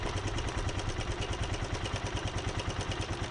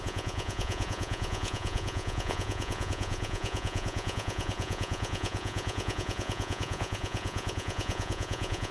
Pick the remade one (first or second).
second